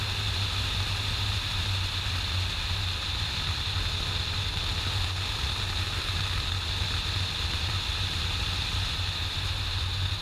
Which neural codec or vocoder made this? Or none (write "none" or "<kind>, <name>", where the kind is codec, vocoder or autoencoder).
none